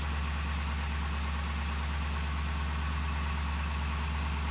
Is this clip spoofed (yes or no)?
no